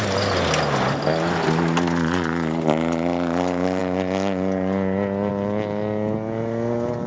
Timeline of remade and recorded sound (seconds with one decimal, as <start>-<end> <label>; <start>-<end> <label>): 0.0-7.1 recorded